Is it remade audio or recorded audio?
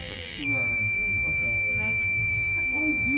remade